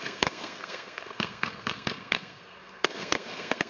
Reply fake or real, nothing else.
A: fake